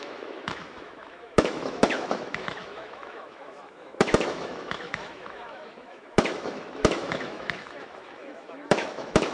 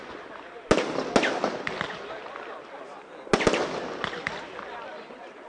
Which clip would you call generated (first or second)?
first